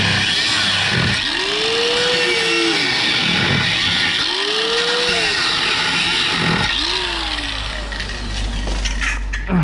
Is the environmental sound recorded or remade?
recorded